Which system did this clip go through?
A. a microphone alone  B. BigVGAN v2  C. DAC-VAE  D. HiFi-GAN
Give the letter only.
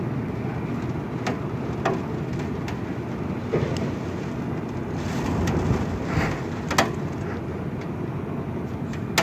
A